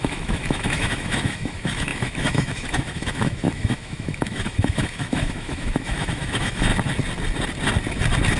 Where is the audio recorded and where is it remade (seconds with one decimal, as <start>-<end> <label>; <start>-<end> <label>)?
0.0-6.7 remade; 6.7-8.4 recorded

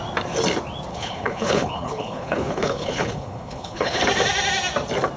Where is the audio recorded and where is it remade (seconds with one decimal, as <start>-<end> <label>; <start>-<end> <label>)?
0.0-0.9 recorded; 0.9-4.0 remade; 4.0-5.2 recorded

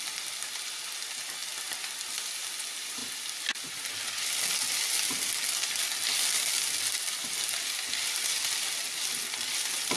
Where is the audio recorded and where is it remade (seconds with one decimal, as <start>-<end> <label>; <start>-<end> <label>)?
0.0-10.0 recorded